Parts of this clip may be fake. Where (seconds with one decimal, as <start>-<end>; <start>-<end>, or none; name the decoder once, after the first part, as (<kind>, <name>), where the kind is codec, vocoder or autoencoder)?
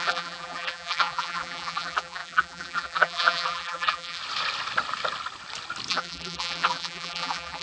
0.0-4.2 (vocoder, BigVGAN v2); 5.9-7.6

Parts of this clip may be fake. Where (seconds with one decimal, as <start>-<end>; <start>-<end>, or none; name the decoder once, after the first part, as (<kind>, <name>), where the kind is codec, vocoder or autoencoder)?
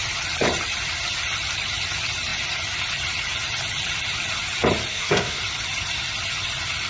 4.9-5.4 (codec, SNAC)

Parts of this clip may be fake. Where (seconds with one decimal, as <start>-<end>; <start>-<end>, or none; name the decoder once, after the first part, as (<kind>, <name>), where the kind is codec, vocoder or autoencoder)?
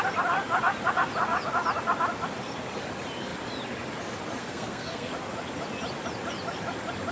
4.4-5.1 (codec, SNAC)